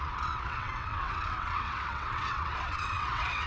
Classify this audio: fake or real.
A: fake